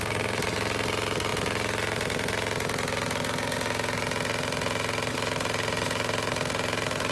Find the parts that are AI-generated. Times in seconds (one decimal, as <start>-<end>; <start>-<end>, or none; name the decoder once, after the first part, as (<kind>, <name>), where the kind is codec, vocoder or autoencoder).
none